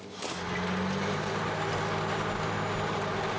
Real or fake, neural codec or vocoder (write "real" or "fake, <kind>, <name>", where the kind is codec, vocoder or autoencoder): real